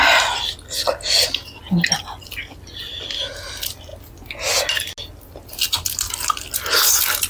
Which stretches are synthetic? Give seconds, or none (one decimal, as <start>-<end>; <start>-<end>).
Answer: none